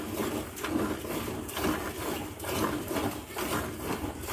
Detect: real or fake real